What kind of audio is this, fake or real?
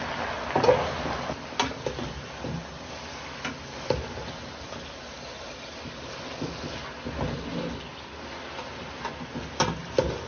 real